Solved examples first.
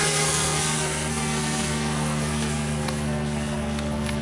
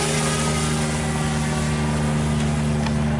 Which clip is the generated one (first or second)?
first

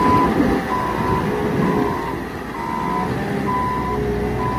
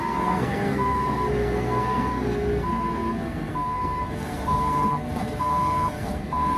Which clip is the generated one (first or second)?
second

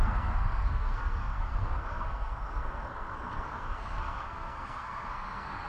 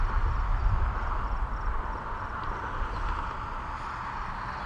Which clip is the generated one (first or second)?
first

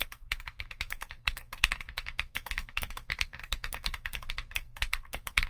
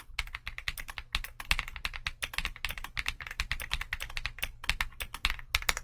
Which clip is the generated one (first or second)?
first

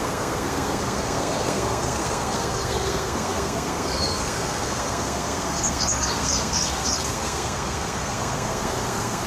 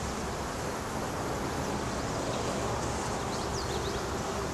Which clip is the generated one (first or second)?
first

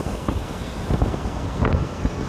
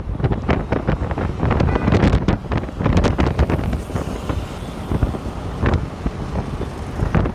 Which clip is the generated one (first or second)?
first